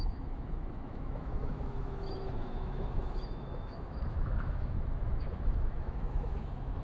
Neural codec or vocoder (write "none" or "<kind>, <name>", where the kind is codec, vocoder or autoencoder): autoencoder, DAC-VAE